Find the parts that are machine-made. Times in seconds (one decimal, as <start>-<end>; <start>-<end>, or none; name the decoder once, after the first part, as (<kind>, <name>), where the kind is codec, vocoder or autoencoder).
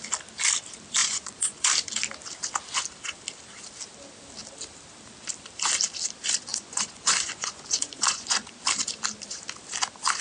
1.0-1.7 (vocoder, Vocos); 6.5-8.5